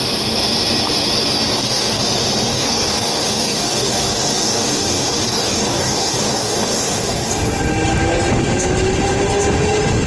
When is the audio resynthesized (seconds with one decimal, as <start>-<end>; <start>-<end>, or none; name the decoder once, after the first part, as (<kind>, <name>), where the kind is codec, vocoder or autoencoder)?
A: 1.5-2.0 (codec, DAC); 2.5-7.3